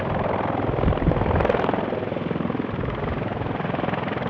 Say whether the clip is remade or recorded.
recorded